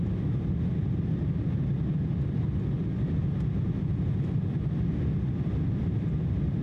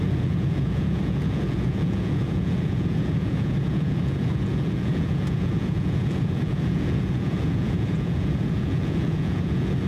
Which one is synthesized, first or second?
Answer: second